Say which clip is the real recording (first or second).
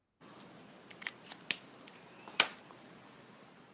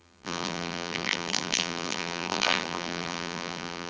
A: first